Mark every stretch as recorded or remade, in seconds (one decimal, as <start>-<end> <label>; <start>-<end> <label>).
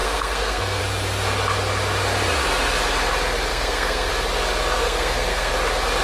0.0-0.8 remade; 0.8-3.5 recorded; 3.5-4.1 remade; 4.1-4.8 recorded; 4.8-5.5 remade; 5.5-6.0 recorded